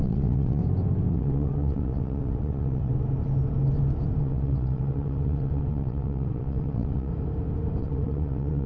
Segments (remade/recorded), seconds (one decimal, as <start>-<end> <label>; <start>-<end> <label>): 0.0-0.6 remade; 0.6-1.1 recorded; 1.1-2.9 remade; 2.9-4.2 recorded; 4.2-7.1 remade; 7.1-7.8 recorded; 7.8-8.7 remade